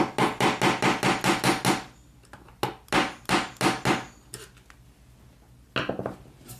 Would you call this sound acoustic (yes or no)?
yes